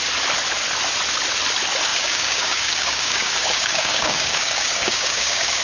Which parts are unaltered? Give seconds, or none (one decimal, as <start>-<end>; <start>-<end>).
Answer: 0.0-1.9